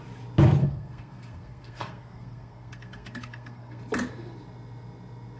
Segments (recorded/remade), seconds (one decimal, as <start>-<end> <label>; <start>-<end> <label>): 0.0-0.6 recorded; 0.6-3.8 remade; 3.8-5.4 recorded